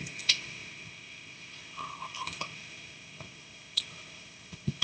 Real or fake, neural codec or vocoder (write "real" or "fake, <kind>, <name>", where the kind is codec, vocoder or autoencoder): fake, codec, ZipCodec